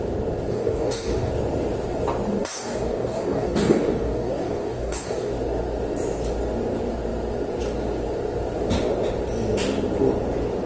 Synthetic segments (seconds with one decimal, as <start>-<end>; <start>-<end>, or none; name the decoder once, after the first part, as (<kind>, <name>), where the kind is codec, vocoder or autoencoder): 0.5-1.3 (codec, DAC); 2.4-5.3